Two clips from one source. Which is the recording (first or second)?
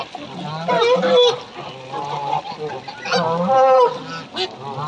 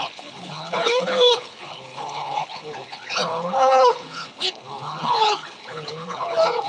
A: first